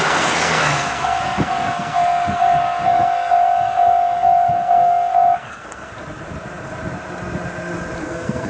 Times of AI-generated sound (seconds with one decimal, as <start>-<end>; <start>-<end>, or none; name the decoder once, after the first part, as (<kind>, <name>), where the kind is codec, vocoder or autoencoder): 0.0-5.9 (codec, SNAC); 8.0-8.5